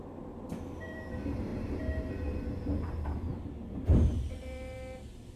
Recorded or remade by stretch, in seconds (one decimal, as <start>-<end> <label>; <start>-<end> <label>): 0.0-3.3 remade; 3.3-4.1 recorded; 4.1-5.4 remade